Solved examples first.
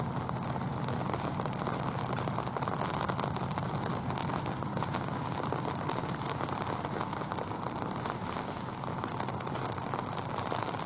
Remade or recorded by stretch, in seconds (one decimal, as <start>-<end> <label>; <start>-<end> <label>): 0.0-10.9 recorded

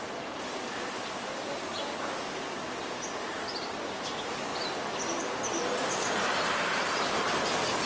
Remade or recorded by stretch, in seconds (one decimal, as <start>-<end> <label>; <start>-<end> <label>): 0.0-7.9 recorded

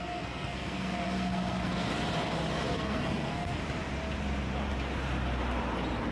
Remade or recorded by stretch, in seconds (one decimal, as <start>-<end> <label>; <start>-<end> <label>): 0.0-1.9 remade; 1.9-2.7 recorded; 2.7-3.6 remade; 3.6-6.1 recorded

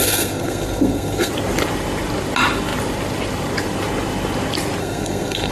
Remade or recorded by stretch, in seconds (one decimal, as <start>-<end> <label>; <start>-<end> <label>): 0.0-1.3 remade; 1.3-4.8 recorded; 4.8-5.5 remade